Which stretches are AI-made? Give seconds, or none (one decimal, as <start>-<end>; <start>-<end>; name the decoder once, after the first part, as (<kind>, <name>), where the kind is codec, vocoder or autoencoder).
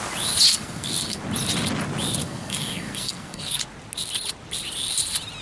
0.5-1.2 (codec, SNAC); 2.2-3.6